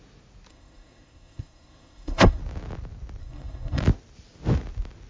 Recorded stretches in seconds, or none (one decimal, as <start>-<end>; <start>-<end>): 0.0-0.5; 2.4-3.2; 3.8-5.1